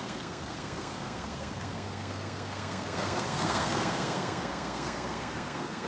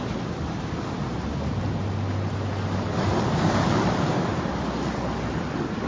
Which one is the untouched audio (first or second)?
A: second